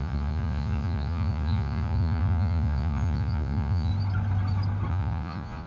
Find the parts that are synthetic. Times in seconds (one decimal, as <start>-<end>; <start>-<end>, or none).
0.0-3.9; 4.9-5.7